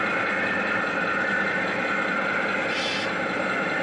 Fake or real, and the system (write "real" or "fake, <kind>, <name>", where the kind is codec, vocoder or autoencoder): real